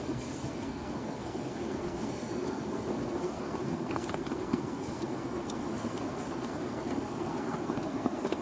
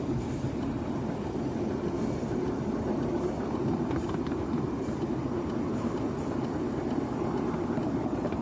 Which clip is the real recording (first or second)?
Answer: second